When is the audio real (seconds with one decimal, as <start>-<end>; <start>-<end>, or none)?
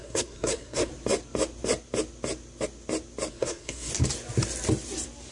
0.9-3.3; 3.9-5.3